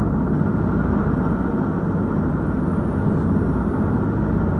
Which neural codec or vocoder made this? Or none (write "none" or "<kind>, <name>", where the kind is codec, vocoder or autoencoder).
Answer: none